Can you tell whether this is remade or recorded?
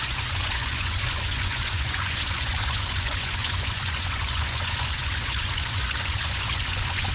remade